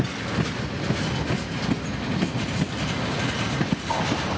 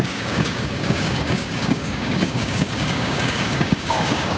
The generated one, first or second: second